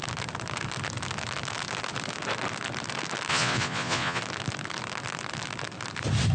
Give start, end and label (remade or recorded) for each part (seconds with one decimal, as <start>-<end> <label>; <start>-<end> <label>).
0.0-3.3 recorded; 3.3-4.2 remade; 4.2-6.3 recorded